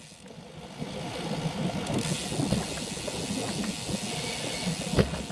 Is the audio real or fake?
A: real